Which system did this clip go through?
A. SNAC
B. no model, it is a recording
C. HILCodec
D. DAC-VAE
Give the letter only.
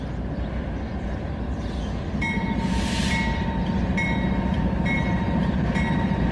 B